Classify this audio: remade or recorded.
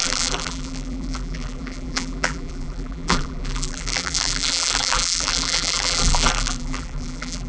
remade